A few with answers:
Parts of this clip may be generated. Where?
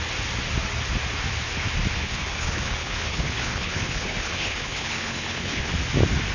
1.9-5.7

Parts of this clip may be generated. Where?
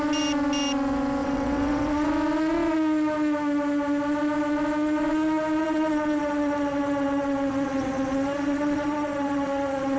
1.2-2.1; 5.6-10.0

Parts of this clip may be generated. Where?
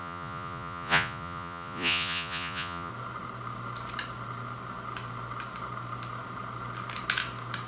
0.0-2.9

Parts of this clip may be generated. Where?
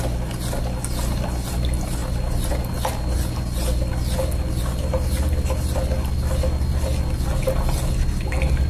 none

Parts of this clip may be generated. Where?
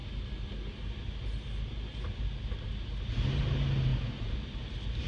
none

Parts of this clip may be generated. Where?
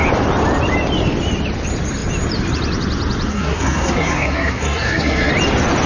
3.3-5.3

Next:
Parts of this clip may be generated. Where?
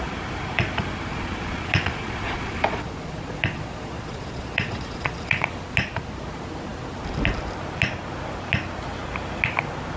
1.1-5.5